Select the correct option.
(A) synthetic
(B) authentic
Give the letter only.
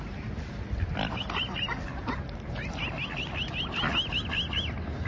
B